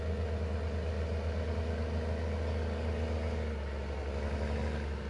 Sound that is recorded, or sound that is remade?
recorded